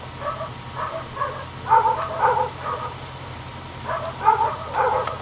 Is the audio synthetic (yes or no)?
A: no